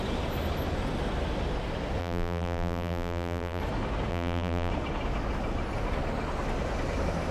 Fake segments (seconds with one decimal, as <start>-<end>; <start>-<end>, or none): 2.0-3.6; 4.1-4.7

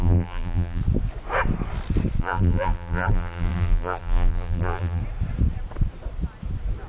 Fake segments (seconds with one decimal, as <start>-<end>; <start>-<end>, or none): 0.0-0.8; 2.2-5.0

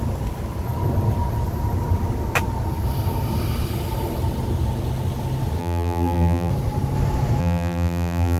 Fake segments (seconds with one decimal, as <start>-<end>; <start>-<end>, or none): 5.6-6.5; 7.4-8.4

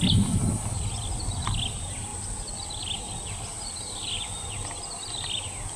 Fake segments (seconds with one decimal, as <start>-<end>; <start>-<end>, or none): none

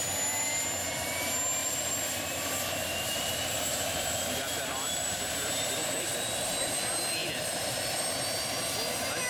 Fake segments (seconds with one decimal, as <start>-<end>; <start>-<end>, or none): 1.6-6.8; 7.2-8.0

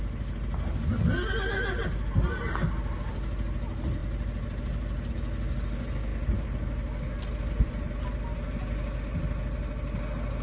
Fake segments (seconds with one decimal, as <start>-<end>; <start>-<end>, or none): none